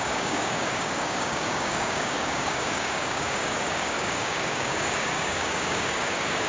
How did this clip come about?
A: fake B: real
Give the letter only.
A